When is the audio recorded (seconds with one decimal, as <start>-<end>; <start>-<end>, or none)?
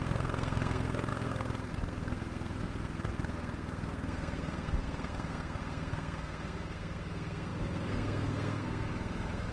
none